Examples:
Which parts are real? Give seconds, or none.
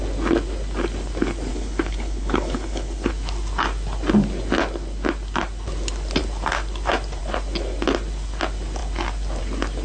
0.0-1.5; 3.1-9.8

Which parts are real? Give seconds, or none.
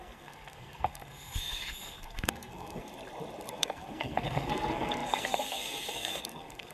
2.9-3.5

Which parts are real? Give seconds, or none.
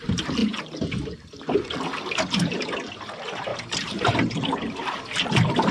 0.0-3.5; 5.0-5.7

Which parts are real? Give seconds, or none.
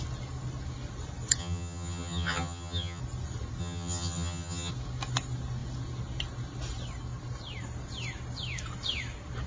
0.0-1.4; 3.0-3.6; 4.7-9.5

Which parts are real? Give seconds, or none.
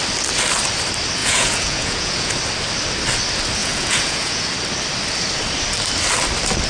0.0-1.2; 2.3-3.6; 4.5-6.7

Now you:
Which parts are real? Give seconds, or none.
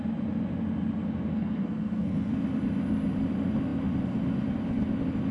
0.0-1.3; 2.3-5.3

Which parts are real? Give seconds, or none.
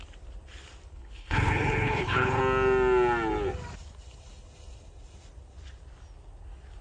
0.0-0.9; 2.4-6.8